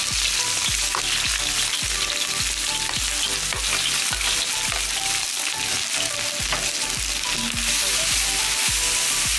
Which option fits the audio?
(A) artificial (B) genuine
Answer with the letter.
B